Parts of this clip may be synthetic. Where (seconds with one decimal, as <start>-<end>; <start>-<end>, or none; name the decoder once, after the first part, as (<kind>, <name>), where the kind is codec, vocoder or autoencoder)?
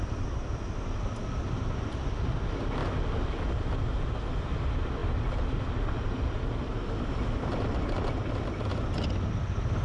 none